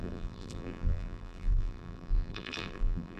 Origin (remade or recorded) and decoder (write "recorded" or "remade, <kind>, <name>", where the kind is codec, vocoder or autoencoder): remade, vocoder, BigVGAN v2